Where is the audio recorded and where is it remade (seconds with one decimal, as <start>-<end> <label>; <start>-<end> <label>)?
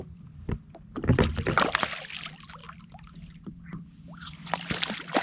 0.0-5.2 recorded